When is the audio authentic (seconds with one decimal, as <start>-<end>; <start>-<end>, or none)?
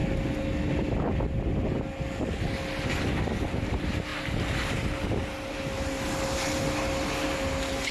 0.0-7.9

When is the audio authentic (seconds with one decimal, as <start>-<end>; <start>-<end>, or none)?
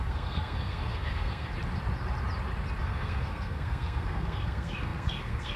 1.5-2.8